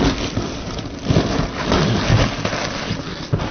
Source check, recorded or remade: recorded